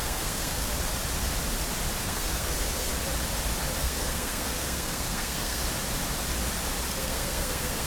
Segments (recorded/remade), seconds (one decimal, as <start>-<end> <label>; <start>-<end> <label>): 0.0-0.7 remade; 0.7-2.0 recorded; 2.0-2.9 remade; 2.9-3.8 recorded; 3.8-5.6 remade; 5.6-6.9 recorded; 6.9-7.9 remade